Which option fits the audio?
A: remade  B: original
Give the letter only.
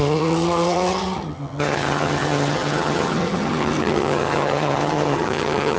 A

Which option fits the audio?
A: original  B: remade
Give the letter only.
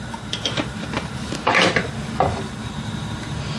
B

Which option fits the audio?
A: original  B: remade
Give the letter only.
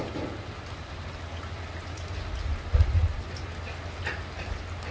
A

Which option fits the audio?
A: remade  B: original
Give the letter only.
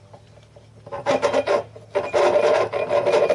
B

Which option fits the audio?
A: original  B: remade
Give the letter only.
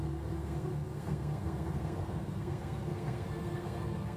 B